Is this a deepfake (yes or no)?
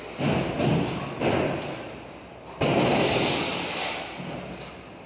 no